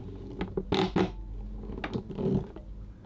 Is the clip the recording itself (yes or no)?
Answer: yes